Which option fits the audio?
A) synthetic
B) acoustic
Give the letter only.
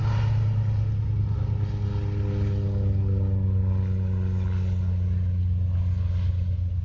B